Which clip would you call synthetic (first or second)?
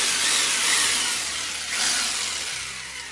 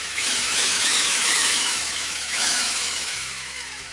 second